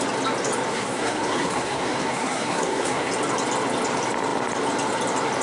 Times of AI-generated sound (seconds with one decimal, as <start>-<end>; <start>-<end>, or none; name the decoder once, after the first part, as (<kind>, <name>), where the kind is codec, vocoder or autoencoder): 0.7-3.1 (codec, SNAC)